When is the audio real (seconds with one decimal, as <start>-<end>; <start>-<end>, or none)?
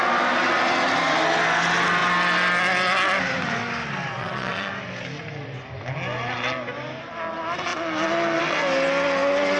0.0-4.2; 4.7-9.6